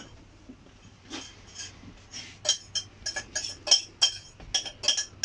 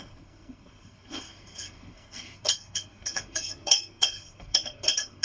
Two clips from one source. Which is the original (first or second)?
first